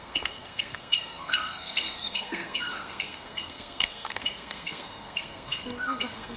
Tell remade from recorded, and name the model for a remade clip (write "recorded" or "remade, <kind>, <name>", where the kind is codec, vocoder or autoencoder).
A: remade, codec, SNAC